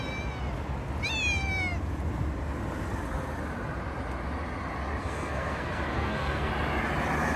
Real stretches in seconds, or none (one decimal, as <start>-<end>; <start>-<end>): 0.0-5.0; 6.5-7.4